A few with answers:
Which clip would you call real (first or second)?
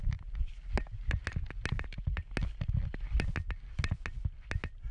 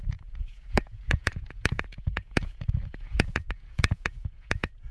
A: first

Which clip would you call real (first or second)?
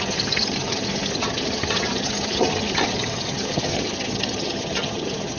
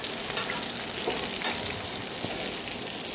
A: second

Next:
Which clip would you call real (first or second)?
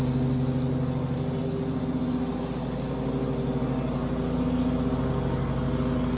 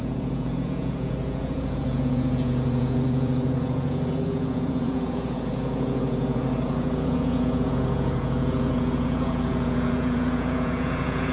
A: first